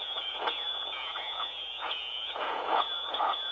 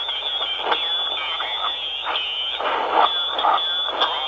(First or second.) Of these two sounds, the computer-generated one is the first